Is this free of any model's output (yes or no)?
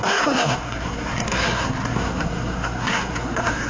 no